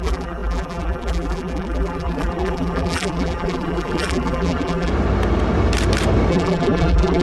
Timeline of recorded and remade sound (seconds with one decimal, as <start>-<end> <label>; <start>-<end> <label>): 0.0-4.9 remade; 4.9-6.3 recorded; 6.3-7.2 remade